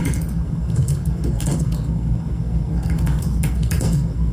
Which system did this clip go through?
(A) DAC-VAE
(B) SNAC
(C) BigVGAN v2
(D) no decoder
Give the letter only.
B